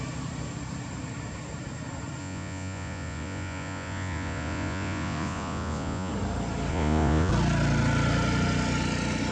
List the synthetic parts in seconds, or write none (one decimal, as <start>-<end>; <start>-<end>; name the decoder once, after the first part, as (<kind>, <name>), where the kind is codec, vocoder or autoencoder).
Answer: 2.2-6.1 (vocoder, Vocos); 6.7-7.3

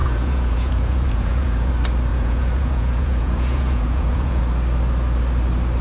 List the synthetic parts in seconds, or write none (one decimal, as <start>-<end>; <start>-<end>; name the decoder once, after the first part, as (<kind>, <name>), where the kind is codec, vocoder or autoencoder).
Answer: 0.0-1.7 (vocoder, Vocos); 2.1-4.4